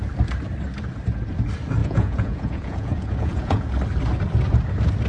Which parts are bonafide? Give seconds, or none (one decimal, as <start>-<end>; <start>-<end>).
0.0-1.8; 3.7-5.1